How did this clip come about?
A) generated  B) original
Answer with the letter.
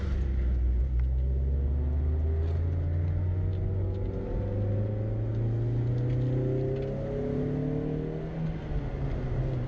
B